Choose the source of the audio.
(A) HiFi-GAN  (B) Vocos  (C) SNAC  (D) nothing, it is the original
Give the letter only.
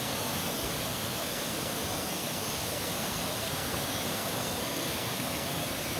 C